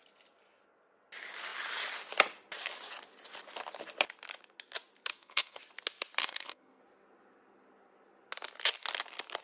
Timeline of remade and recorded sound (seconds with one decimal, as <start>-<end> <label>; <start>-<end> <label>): 0.0-5.1 recorded; 5.1-5.6 remade; 5.6-6.2 recorded; 6.2-6.8 remade; 6.8-9.4 recorded